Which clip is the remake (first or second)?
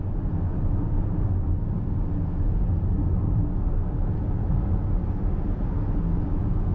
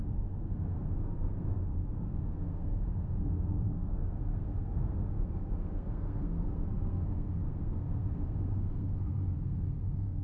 second